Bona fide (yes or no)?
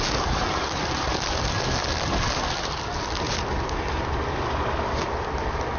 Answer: yes